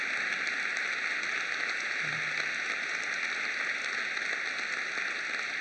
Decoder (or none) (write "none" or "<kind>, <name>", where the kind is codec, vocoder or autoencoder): none